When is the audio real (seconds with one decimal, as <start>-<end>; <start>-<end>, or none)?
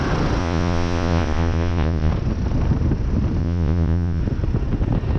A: 0.0-0.4; 2.1-3.4; 4.2-5.2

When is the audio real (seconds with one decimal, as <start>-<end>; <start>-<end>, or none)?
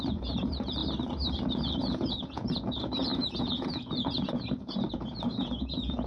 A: 0.8-1.5